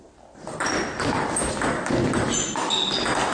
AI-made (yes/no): no